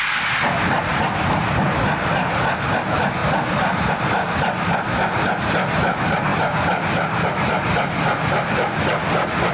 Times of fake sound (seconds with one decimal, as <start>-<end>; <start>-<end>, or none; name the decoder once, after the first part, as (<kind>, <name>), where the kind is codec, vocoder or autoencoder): none